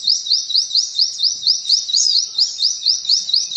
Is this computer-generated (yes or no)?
yes